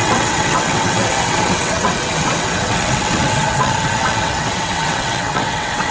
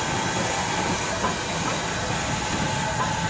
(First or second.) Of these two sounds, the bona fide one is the second